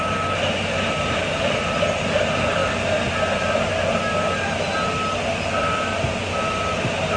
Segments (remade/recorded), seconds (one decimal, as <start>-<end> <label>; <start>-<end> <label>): 0.0-7.2 recorded